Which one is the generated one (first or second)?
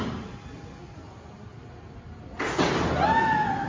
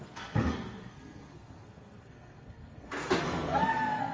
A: second